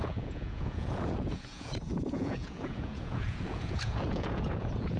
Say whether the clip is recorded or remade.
remade